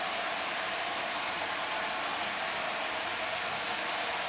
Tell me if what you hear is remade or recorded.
recorded